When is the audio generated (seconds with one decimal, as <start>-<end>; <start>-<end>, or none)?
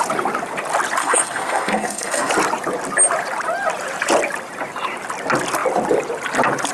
1.0-2.3